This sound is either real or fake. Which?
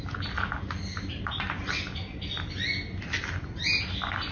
real